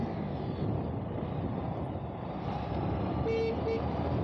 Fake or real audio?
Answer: real